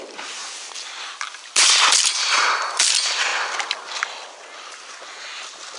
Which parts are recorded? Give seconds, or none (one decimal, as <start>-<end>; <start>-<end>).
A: 0.0-5.8